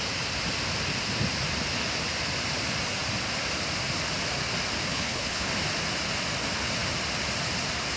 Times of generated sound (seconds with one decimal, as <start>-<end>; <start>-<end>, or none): 4.9-5.5